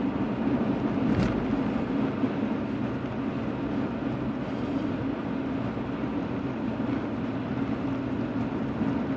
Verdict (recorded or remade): recorded